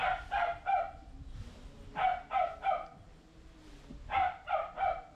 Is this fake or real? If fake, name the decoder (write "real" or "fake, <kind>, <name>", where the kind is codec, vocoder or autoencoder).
real